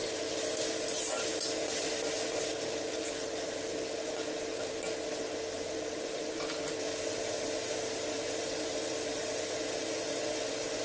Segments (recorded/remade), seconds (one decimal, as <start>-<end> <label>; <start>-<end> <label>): 0.0-10.8 recorded